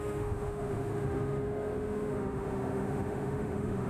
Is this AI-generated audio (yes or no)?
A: yes